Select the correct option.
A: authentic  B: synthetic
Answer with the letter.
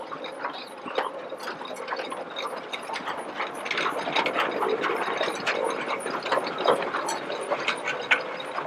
A